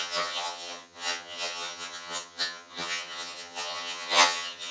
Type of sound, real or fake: fake